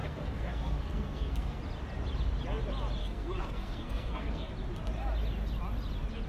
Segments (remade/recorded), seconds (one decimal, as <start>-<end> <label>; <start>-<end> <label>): 0.0-1.6 remade; 1.6-3.0 recorded; 3.0-4.5 remade; 4.5-6.3 recorded